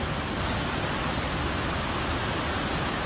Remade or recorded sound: recorded